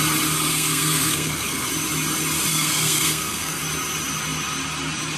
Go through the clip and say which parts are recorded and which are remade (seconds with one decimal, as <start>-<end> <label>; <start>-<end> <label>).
0.0-0.5 recorded; 0.5-1.7 remade; 1.7-2.5 recorded; 2.5-3.6 remade; 3.6-5.2 recorded